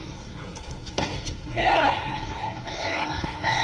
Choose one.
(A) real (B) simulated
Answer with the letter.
B